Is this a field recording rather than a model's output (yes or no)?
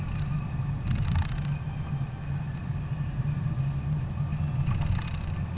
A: yes